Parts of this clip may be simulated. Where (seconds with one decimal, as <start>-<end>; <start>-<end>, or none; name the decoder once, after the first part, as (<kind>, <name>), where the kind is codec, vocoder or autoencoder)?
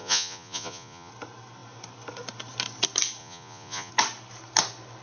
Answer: 0.0-1.1 (vocoder, Vocos); 3.2-3.9